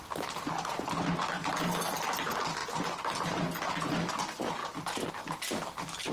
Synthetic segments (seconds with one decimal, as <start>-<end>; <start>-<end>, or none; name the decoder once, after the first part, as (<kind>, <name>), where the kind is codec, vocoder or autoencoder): none